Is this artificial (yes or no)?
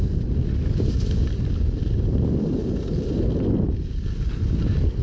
no